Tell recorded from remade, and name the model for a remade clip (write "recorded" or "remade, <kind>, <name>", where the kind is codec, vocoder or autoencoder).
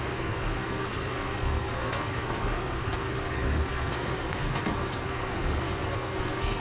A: remade, codec, SNAC